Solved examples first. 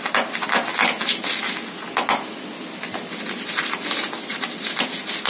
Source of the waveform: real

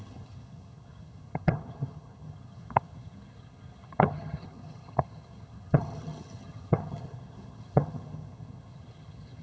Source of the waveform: fake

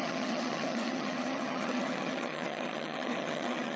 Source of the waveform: fake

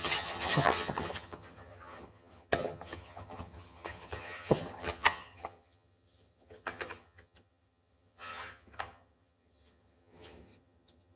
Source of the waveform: fake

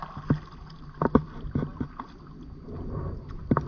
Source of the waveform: real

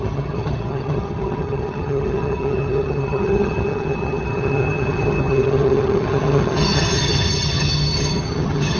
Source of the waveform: fake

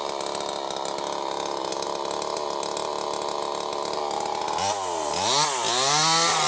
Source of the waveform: real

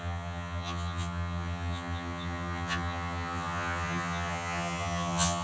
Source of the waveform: fake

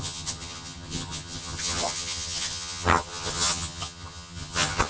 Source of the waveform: fake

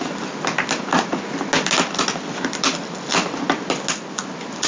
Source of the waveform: real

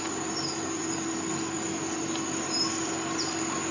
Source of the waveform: real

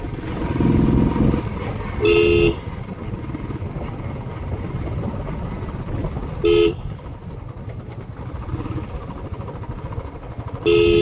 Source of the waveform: real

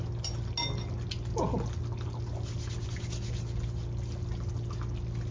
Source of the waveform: real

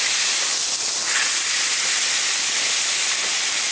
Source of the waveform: real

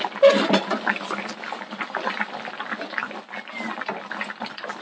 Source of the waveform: real